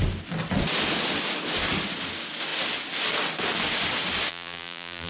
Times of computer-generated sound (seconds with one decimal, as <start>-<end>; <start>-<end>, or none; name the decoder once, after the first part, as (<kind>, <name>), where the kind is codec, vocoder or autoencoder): 4.3-5.1 (vocoder, BigVGAN v2)

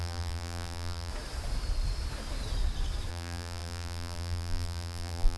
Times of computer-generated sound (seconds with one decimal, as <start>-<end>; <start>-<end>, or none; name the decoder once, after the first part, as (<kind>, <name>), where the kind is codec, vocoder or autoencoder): 0.0-1.1 (vocoder, BigVGAN v2); 3.1-5.4

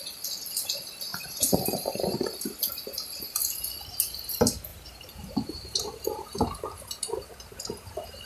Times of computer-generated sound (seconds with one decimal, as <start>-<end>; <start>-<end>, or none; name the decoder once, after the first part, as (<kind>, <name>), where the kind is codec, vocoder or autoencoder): 4.7-7.3 (vocoder, BigVGAN v2)

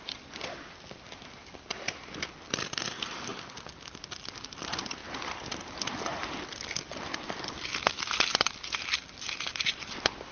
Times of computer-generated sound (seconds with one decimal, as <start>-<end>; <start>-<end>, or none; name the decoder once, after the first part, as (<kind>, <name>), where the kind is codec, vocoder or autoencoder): 0.0-3.3 (vocoder, BigVGAN v2); 4.6-5.0; 6.9-10.3

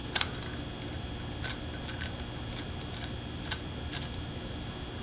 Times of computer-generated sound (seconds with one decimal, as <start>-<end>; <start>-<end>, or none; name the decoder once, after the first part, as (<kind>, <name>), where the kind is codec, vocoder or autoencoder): none

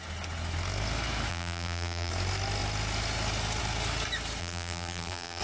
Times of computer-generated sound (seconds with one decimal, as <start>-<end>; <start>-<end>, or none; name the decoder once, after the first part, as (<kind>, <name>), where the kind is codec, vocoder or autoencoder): 1.3-2.1 (vocoder, BigVGAN v2); 4.4-5.4

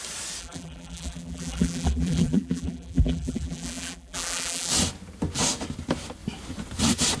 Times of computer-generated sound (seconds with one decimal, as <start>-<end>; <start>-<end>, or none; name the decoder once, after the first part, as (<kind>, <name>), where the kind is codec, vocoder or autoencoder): 0.4-4.7 (vocoder, BigVGAN v2)